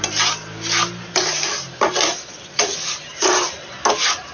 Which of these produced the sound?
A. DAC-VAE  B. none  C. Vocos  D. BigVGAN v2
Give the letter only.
B